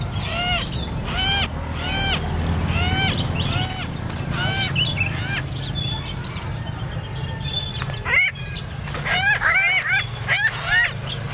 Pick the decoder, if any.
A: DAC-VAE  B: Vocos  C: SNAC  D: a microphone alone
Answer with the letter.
D